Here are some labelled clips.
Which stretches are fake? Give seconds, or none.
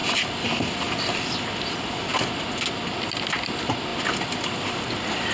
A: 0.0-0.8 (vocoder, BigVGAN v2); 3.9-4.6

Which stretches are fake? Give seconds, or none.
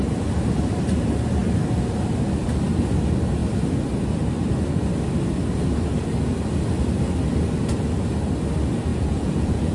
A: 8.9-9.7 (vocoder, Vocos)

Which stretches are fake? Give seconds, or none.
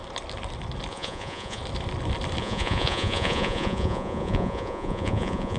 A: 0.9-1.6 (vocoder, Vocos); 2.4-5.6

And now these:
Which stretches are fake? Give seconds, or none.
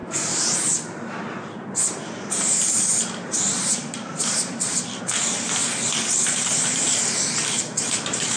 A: 0.0-5.6 (vocoder, BigVGAN v2); 6.1-8.4